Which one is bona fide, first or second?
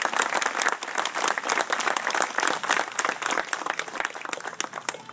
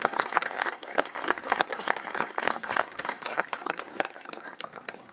first